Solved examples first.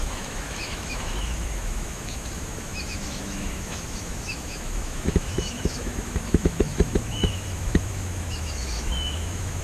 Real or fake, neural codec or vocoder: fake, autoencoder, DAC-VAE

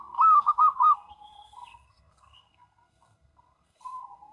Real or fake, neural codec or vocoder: fake, codec, SNAC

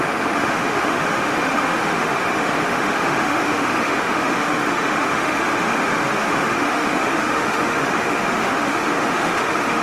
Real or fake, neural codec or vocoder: fake, autoencoder, DAC-VAE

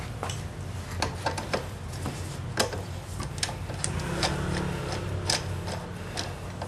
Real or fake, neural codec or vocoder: real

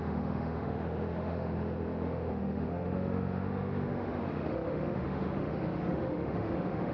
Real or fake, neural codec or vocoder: fake, autoencoder, DAC-VAE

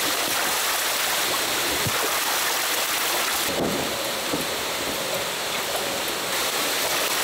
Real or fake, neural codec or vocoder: real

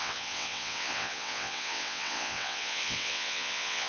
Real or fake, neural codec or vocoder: fake, vocoder, WaveNeXt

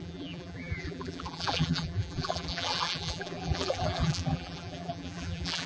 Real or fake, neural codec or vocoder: fake, vocoder, BigVGAN v2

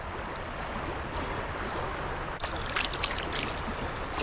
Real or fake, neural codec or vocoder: real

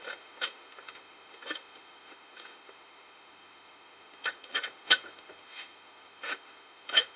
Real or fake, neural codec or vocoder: fake, autoencoder, DAC-VAE